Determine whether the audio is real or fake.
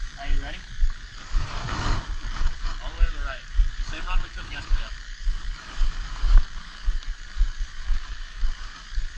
fake